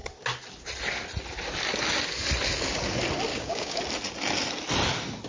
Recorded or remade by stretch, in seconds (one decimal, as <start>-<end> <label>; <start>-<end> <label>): 0.0-3.3 recorded; 3.3-3.8 remade; 3.8-5.3 recorded